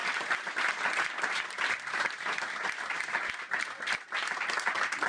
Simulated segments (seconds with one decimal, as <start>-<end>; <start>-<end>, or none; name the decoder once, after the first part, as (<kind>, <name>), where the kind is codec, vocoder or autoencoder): none